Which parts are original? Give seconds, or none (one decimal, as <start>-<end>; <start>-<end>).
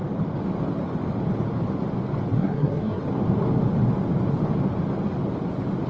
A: 0.0-2.3; 3.0-5.9